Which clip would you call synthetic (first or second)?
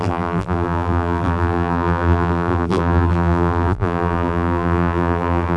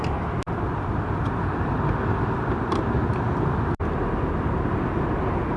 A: first